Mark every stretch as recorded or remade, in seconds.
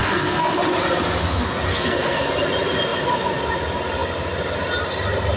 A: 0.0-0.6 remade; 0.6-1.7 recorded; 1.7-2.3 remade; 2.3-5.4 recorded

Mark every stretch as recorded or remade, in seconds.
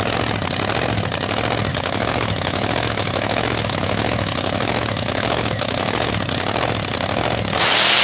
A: 0.0-1.7 recorded; 1.7-6.1 remade; 6.1-8.0 recorded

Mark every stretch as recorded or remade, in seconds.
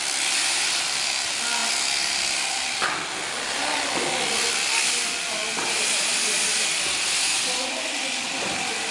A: 0.0-8.9 recorded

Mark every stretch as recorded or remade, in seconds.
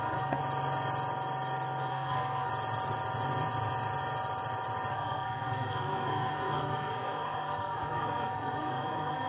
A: 0.0-0.4 remade; 0.4-1.9 recorded; 1.9-2.5 remade; 2.5-4.9 recorded; 4.9-9.3 remade